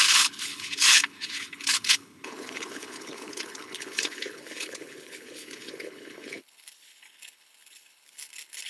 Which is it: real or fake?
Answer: fake